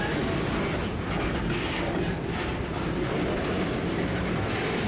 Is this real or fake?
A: real